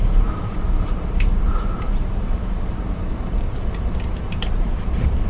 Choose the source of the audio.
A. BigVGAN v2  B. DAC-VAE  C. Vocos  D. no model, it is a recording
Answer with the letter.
A